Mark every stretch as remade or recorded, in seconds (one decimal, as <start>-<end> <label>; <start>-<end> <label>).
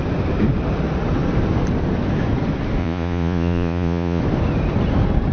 0.0-2.8 recorded; 2.8-4.2 remade; 4.2-5.3 recorded